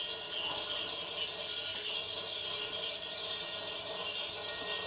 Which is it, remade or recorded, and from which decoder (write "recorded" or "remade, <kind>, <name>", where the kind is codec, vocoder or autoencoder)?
recorded